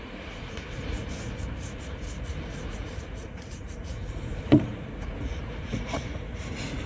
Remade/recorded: remade